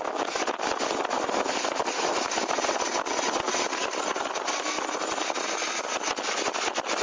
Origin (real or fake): real